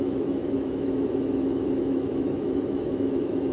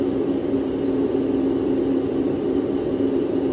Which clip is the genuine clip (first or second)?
second